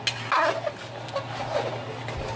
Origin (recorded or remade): recorded